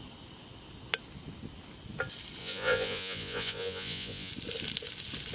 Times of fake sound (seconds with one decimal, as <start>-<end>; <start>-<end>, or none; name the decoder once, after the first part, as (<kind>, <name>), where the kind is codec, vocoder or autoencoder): 2.4-4.3 (vocoder, Vocos)